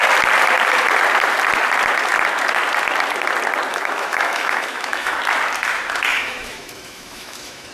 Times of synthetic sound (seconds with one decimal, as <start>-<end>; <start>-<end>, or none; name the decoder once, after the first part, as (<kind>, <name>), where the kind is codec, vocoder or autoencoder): 3.7-5.2 (autoencoder, DAC-VAE); 6.1-7.7